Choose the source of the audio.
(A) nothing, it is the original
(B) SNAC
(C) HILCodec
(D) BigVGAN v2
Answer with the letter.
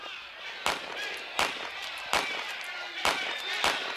A